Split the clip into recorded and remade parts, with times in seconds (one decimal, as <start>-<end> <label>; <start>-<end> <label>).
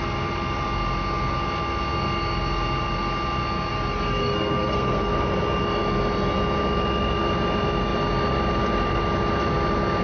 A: 0.0-4.2 recorded; 4.2-5.1 remade; 5.1-10.0 recorded